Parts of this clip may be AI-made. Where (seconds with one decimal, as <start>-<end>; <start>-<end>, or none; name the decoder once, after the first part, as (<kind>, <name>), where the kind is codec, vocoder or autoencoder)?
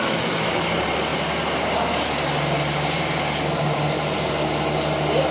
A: none